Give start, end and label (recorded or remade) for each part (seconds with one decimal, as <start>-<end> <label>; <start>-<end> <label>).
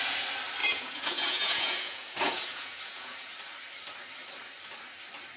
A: 0.0-0.6 recorded; 0.6-3.3 remade; 3.3-5.4 recorded